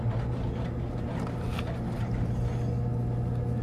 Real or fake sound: real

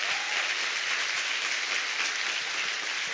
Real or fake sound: real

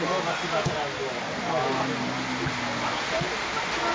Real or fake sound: real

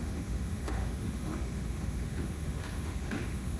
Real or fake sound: fake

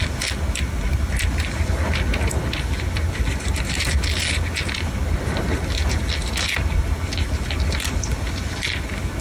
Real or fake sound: real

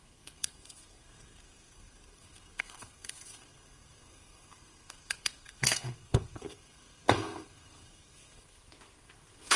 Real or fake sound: fake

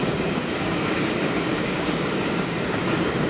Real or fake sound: fake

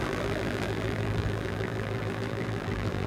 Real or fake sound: fake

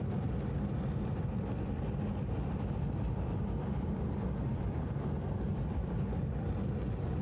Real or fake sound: real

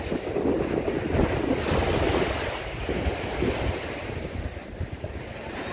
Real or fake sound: real